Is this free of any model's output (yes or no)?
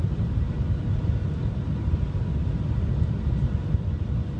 yes